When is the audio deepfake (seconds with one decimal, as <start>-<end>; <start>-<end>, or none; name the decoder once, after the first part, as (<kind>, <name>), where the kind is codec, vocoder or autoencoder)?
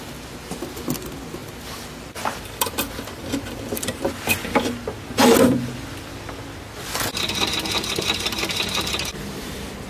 1.4-4.1 (vocoder, BigVGAN v2)